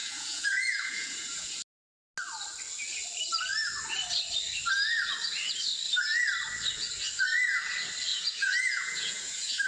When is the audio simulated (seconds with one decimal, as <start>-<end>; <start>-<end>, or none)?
0.0-1.6; 8.1-9.7